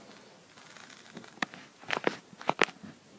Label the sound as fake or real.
real